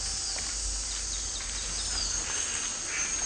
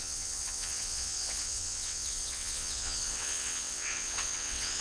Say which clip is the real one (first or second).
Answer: first